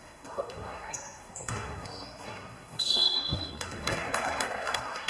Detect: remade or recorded remade